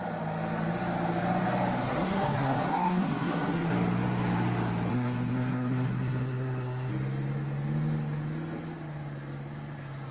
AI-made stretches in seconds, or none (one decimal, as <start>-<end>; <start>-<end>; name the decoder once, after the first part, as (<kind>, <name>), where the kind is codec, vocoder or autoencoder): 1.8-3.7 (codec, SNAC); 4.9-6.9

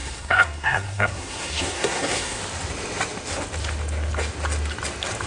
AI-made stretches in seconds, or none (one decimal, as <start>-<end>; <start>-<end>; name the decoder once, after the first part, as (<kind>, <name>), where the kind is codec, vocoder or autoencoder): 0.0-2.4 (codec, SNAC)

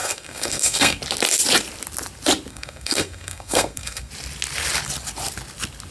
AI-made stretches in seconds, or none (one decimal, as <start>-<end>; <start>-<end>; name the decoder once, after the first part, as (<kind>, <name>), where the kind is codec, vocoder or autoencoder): 0.0-1.0 (codec, SNAC); 2.5-4.1

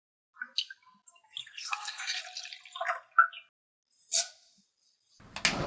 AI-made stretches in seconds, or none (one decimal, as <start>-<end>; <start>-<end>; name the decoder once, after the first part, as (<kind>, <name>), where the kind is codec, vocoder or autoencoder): 1.4-2.2 (codec, SNAC)